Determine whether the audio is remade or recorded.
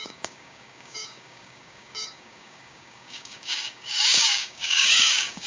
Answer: remade